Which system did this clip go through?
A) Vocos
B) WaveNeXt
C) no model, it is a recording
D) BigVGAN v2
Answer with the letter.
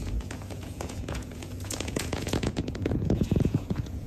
A